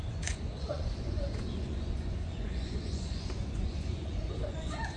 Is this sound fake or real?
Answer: fake